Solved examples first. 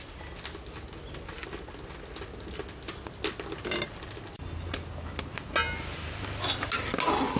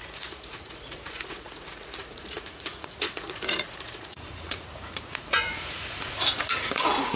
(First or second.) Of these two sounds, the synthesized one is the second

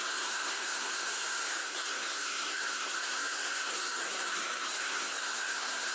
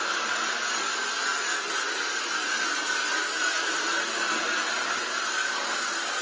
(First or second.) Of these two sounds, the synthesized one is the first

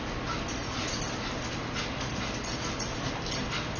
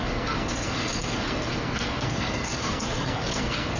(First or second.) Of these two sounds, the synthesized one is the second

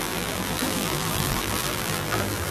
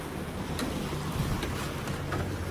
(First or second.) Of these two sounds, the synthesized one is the first